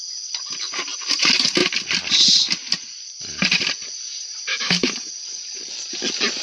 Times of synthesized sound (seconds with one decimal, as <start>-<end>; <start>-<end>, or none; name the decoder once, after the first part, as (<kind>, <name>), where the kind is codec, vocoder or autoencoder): 4.5-5.1 (autoencoder, DAC-VAE)